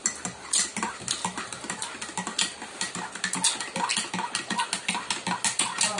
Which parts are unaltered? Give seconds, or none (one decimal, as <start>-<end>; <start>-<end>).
0.0-6.0